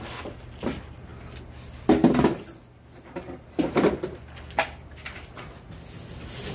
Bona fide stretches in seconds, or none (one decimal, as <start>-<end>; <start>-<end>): 0.0-6.5